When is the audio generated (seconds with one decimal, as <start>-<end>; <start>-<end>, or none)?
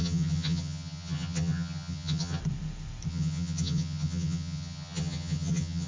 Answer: 0.0-2.4; 3.1-5.9